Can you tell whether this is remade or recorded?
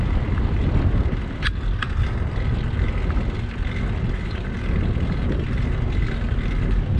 recorded